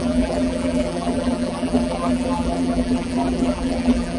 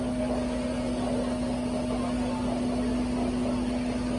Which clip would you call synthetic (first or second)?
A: first